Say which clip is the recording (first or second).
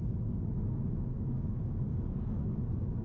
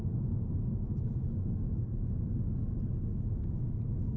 second